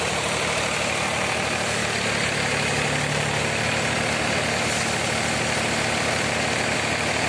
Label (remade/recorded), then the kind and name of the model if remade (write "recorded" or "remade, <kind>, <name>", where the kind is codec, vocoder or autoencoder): recorded